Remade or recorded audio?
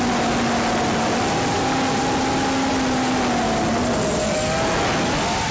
recorded